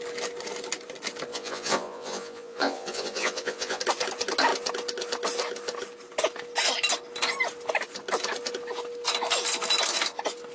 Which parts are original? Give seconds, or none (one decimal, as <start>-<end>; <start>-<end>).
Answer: 0.0-1.3; 3.8-10.5